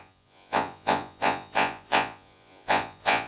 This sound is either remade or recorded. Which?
remade